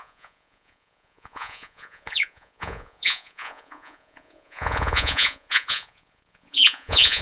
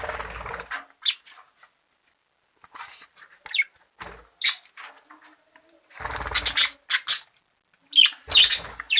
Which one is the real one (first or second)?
second